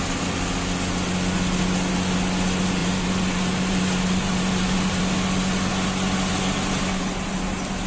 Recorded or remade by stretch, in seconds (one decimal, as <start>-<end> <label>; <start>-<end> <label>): 0.0-2.8 recorded; 2.8-5.0 remade; 5.0-7.9 recorded